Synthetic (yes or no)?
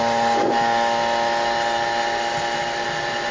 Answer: no